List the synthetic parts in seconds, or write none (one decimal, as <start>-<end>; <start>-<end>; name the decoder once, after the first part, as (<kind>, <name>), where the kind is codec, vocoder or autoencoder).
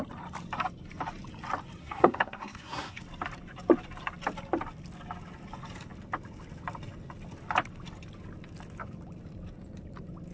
1.8-3.0 (codec, SNAC)